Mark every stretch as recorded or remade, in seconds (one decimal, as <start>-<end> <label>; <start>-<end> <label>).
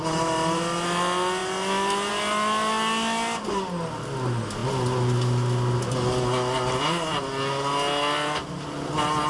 0.0-9.3 recorded